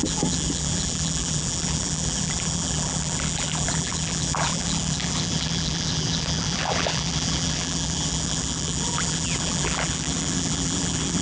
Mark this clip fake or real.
fake